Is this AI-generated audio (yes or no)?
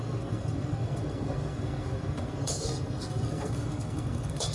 yes